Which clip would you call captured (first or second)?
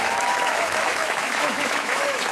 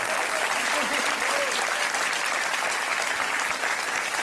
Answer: second